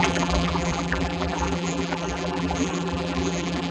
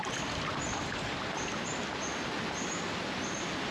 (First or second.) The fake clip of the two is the first